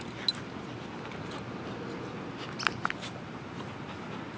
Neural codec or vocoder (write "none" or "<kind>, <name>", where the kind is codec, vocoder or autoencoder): none